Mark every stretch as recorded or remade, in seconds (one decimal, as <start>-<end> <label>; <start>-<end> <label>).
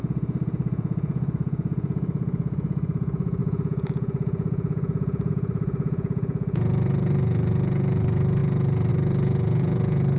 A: 0.0-10.2 remade